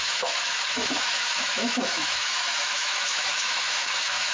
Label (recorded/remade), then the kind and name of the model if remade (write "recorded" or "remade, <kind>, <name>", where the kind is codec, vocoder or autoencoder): remade, autoencoder, DAC-VAE